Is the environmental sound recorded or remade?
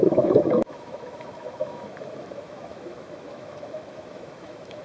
remade